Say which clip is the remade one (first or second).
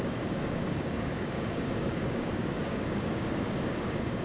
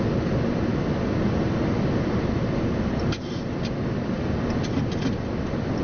first